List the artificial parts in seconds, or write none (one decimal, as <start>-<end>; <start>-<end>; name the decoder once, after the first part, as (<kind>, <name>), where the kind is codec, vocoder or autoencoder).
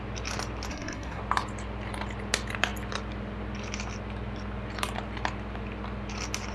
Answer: 0.7-1.2 (codec, SNAC)